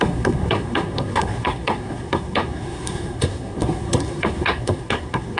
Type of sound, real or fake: fake